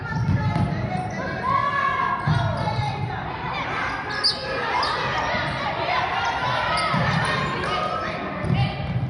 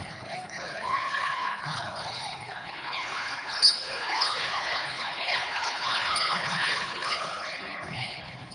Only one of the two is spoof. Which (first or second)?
second